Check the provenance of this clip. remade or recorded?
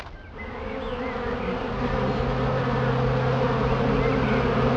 recorded